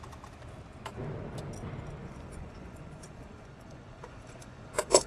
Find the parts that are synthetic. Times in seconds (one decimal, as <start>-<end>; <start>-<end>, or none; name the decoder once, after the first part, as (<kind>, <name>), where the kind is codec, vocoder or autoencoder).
2.0-5.1 (vocoder, Vocos)